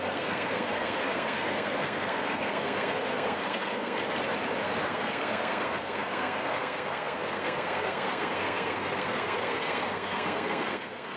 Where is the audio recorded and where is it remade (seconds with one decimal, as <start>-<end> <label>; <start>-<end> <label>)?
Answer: 0.0-4.0 remade; 4.0-4.6 recorded; 4.6-11.2 remade